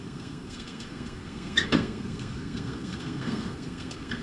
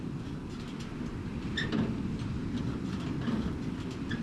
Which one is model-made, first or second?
first